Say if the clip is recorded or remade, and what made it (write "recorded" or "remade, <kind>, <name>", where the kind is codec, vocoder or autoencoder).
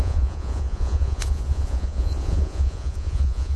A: remade, vocoder, Vocos